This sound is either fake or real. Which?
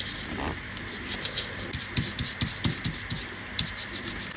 real